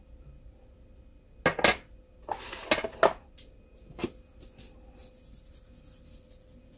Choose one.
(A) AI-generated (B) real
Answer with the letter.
B